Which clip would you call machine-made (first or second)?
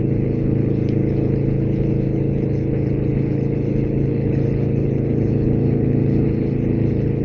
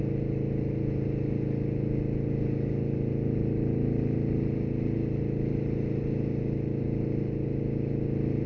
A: first